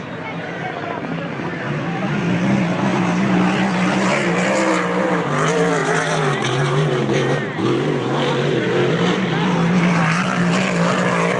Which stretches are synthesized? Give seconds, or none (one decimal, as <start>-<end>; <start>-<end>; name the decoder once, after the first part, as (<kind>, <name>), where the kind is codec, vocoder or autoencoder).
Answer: 2.9-3.4 (vocoder, BigVGAN v2); 5.8-8.3